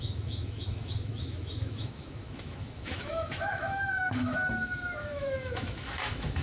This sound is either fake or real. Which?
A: fake